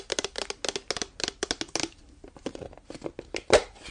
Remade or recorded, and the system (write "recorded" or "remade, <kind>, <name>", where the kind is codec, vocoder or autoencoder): recorded